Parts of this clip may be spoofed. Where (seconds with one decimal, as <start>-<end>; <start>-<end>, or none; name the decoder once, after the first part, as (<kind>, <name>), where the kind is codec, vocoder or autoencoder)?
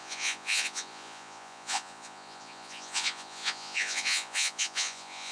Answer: 0.0-5.3 (vocoder, Vocos)